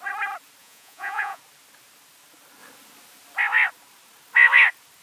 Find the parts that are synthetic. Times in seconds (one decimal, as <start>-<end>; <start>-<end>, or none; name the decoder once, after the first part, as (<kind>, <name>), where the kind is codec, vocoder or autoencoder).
0.6-1.4 (vocoder, Vocos)

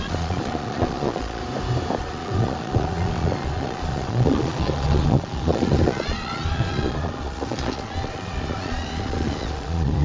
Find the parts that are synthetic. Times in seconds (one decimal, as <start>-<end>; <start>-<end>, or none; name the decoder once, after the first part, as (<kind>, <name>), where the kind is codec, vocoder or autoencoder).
0.0-1.4 (vocoder, Vocos); 2.0-10.0

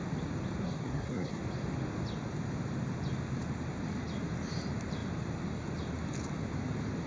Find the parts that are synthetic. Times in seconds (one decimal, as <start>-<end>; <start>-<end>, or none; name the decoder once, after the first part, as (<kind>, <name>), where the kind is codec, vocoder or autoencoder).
0.6-1.4 (codec, SNAC)